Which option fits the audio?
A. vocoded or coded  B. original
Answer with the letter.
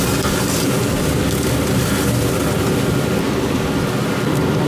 A